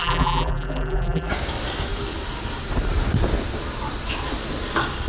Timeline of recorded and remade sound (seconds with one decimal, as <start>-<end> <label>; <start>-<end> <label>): 0.0-1.3 remade; 1.3-5.1 recorded